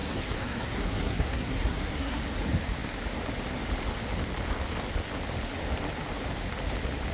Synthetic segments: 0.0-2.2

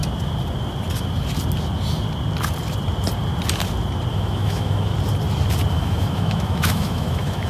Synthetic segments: 4.1-4.9; 5.7-7.5

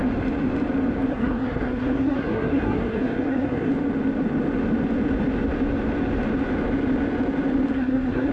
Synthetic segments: 1.1-3.7; 7.7-8.3